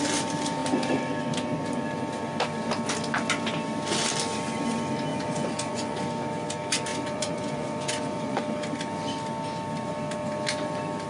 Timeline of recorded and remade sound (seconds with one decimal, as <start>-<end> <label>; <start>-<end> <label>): 0.0-5.1 recorded; 5.1-6.0 remade; 6.0-6.9 recorded; 6.9-8.4 remade; 8.4-11.1 recorded